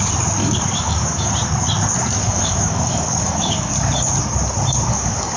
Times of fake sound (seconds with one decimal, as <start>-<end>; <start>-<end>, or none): 0.4-1.3; 2.2-3.7; 4.9-5.4

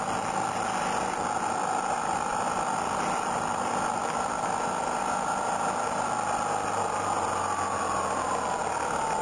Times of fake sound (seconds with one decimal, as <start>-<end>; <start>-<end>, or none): none